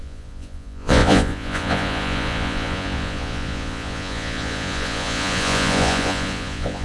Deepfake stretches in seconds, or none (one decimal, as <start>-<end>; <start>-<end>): 0.0-6.8